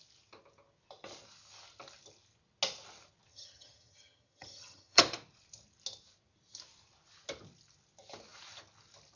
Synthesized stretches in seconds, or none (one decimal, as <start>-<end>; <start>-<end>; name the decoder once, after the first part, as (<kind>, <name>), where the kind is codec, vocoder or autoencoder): 3.3-5.0 (vocoder, HiFi-GAN)